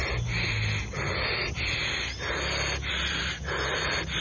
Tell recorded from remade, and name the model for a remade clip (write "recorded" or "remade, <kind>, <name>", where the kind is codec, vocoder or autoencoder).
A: recorded